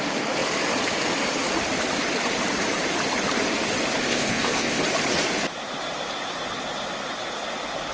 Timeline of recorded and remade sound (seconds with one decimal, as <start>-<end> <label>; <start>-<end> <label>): 0.0-4.0 recorded; 4.0-4.8 remade; 4.8-7.9 recorded